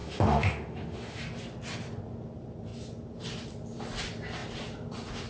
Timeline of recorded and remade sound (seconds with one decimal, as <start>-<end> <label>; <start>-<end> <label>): 0.0-1.2 remade; 1.2-5.3 recorded